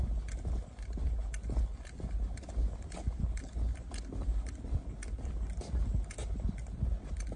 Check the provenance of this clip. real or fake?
real